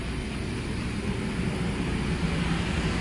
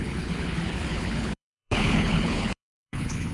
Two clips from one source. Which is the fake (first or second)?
second